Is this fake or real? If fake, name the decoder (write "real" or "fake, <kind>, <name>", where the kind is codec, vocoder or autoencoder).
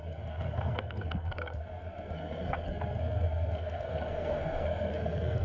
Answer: fake, codec, SNAC